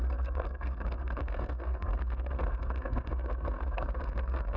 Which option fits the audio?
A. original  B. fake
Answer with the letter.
B